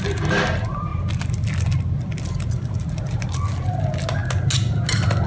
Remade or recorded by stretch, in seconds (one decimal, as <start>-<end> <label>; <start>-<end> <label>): 0.0-5.3 recorded